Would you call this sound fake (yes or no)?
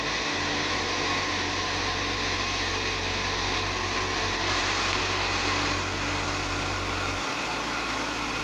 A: no